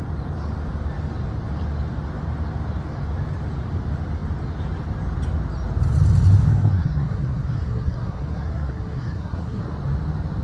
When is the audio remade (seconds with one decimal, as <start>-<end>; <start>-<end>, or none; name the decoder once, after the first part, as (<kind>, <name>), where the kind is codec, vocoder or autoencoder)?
6.5-9.6 (codec, SNAC)